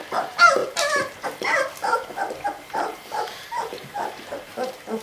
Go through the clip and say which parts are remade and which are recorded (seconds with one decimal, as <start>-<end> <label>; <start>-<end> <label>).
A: 0.0-5.0 remade